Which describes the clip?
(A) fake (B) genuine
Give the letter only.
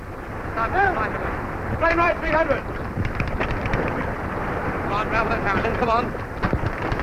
A